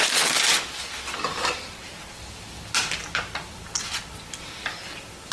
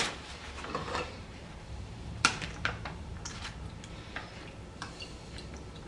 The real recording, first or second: first